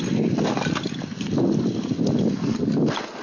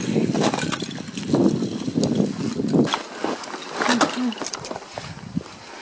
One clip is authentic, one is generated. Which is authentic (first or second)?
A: second